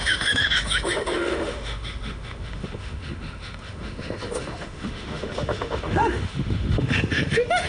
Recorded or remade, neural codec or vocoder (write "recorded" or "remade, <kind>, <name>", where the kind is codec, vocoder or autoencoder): remade, autoencoder, DAC-VAE